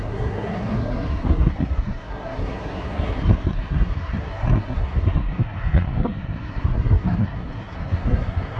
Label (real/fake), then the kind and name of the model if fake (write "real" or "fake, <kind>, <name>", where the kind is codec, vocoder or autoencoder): fake, codec, SNAC